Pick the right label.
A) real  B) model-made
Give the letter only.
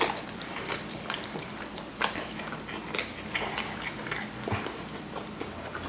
A